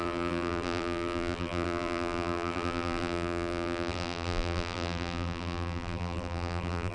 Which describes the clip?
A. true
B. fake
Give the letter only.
B